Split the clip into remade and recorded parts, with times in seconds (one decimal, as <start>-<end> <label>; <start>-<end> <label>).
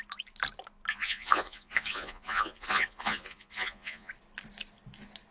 0.0-0.9 recorded; 0.9-4.1 remade; 4.1-5.3 recorded